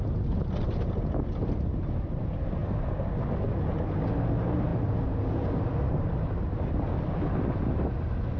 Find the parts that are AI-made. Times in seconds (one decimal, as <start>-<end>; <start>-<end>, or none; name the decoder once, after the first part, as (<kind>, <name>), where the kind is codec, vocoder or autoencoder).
none

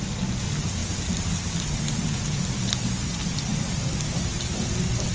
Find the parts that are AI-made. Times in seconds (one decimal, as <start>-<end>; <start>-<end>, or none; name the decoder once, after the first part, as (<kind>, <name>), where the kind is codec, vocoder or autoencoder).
0.8-2.9 (vocoder, BigVGAN v2); 3.5-5.1

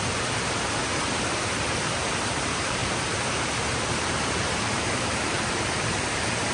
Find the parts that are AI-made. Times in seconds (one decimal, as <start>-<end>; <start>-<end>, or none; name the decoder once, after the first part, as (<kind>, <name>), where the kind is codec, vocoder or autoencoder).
0.0-0.8 (vocoder, BigVGAN v2); 2.0-6.5

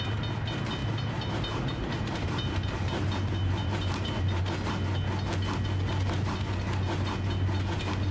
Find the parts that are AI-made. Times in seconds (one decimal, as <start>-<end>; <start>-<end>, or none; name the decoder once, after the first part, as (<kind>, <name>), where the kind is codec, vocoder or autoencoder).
0.8-4.4 (vocoder, BigVGAN v2)

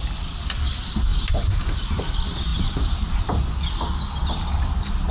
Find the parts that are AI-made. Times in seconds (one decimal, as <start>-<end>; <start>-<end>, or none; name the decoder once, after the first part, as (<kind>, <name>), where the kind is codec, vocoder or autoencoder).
1.1-2.0 (vocoder, BigVGAN v2)

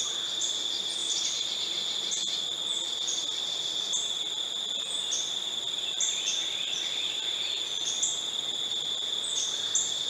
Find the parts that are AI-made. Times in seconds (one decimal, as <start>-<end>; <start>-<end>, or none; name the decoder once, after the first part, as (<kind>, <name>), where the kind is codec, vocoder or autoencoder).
1.0-2.1 (vocoder, BigVGAN v2)

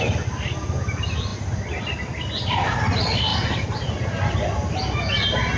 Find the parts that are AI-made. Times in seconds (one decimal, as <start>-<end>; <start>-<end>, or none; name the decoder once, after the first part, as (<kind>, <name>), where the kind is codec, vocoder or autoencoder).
1.3-2.0 (vocoder, BigVGAN v2)